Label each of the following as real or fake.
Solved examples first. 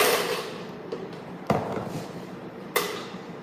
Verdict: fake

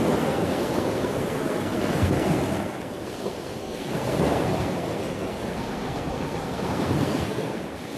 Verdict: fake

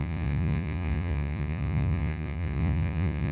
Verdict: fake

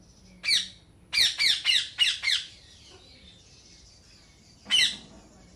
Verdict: real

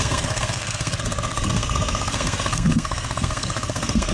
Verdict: fake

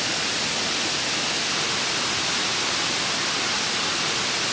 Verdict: real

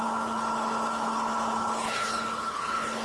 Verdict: fake